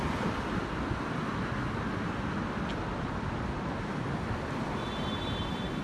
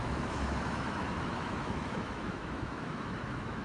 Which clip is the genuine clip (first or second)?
first